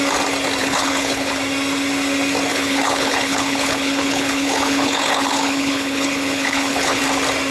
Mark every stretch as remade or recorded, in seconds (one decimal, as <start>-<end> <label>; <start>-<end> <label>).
0.0-0.6 recorded; 0.6-1.3 remade; 1.3-2.5 recorded; 2.5-7.0 remade; 7.0-7.5 recorded